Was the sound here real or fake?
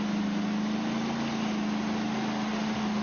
real